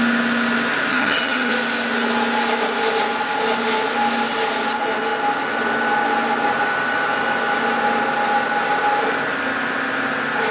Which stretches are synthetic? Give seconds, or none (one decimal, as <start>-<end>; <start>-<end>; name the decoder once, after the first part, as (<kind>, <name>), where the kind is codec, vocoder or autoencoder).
0.9-1.5 (vocoder, HiFi-GAN)

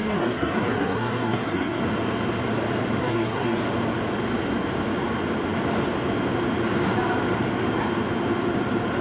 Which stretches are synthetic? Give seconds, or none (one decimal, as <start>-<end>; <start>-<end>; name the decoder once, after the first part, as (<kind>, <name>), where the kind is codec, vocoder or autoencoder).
0.0-1.8 (codec, SNAC); 3.0-3.6

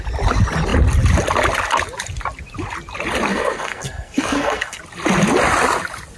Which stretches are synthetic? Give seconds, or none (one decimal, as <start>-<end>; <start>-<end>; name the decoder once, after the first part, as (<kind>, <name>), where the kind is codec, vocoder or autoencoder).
3.3-4.8 (codec, SNAC)

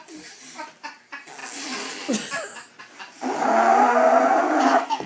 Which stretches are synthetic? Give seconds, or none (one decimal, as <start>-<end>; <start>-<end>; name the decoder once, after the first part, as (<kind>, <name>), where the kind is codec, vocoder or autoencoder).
4.4-5.1 (codec, SNAC)

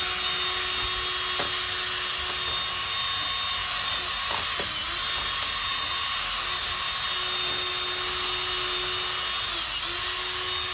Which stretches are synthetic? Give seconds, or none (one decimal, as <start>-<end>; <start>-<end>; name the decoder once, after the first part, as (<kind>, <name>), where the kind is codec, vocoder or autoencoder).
none

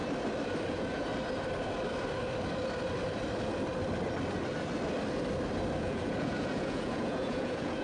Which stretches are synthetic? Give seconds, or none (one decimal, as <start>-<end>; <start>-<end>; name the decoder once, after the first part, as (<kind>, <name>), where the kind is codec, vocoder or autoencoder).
0.7-1.1 (vocoder, Vocos); 5.8-7.8